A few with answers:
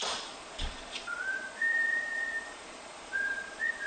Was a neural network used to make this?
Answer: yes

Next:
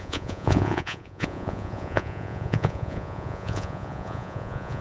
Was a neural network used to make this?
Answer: yes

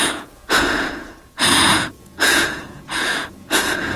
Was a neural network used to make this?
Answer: yes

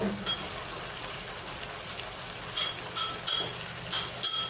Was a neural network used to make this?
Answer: no